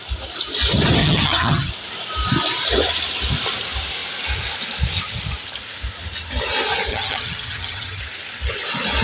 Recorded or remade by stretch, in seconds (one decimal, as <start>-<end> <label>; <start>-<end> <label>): 0.0-1.0 recorded; 1.0-1.7 remade; 1.7-6.9 recorded; 6.9-8.0 remade; 8.0-9.0 recorded